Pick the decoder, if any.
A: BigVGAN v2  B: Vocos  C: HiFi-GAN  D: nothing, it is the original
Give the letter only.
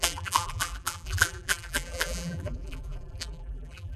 A